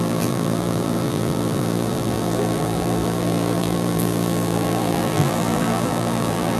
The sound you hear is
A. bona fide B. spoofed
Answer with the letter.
B